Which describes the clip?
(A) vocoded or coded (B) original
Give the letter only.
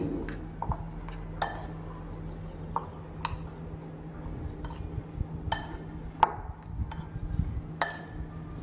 B